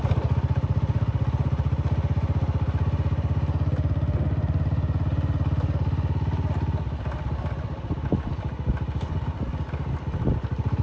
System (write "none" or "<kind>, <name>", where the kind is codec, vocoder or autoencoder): none